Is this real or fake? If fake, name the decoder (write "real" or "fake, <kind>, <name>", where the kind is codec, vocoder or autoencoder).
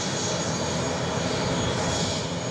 real